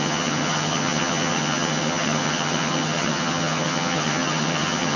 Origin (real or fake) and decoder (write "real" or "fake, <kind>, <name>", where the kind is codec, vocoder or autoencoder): fake, vocoder, HiFi-GAN